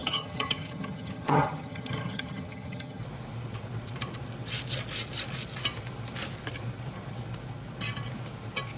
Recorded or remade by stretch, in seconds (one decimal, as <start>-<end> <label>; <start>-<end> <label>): 0.0-3.0 remade; 3.0-8.8 recorded